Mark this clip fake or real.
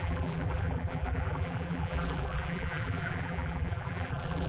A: fake